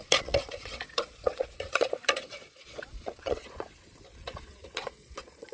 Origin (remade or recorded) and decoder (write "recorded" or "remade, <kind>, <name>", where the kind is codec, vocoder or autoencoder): remade, vocoder, Vocos